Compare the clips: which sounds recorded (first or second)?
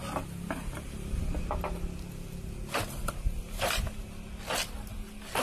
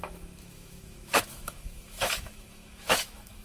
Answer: first